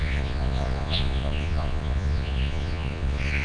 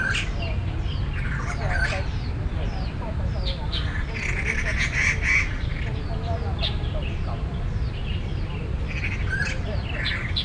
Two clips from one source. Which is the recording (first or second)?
second